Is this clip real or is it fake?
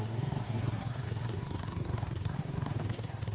fake